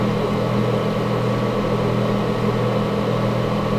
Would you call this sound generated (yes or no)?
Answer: no